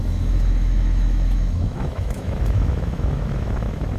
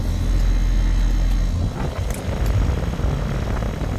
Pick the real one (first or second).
second